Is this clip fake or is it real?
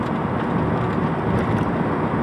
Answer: real